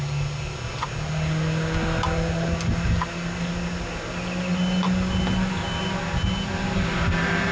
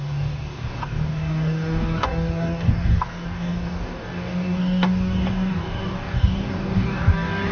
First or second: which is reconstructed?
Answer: second